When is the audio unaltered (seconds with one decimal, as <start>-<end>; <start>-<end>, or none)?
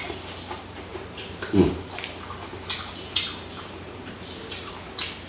0.0-0.9; 4.1-5.3